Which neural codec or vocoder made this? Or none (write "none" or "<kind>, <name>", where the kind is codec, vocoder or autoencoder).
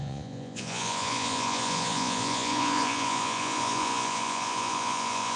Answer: vocoder, Vocos